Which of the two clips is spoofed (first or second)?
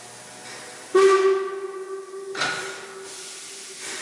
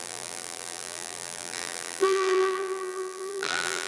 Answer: second